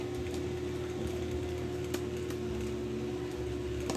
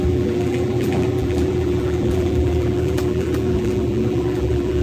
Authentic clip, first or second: first